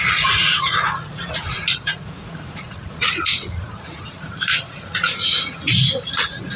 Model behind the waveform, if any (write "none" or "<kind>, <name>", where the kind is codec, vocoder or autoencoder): vocoder, Vocos